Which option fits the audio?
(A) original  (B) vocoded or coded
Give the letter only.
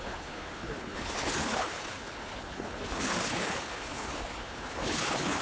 B